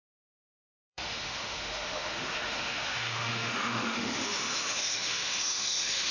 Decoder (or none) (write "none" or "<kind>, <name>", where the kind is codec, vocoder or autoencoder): autoencoder, DAC-VAE